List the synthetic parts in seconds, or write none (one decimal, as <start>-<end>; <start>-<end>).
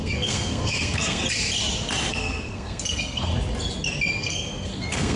0.0-1.2; 2.1-3.3; 4.1-5.2